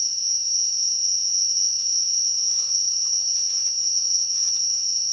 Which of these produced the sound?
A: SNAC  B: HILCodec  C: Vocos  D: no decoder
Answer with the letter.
C